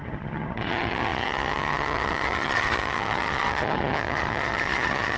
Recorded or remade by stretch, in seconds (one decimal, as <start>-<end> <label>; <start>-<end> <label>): 0.0-5.2 remade